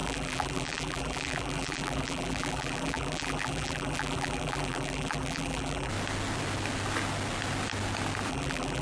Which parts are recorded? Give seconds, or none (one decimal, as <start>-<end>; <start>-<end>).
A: 5.9-8.3